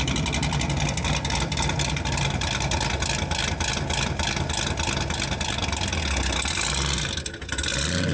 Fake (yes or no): no